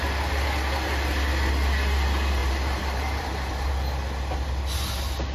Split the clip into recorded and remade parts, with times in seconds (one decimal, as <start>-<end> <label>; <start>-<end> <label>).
0.0-2.4 recorded; 2.4-3.7 remade; 3.7-5.3 recorded